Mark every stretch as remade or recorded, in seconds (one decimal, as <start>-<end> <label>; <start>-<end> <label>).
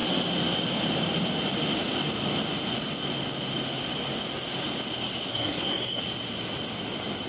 0.0-5.3 recorded; 5.3-6.0 remade; 6.0-7.3 recorded